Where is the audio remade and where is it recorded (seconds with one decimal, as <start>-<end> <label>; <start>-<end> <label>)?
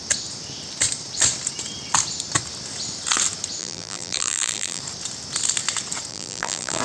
0.0-3.6 recorded; 3.6-4.8 remade; 4.8-6.1 recorded; 6.1-6.8 remade